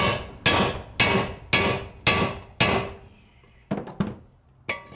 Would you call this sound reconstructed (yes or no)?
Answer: no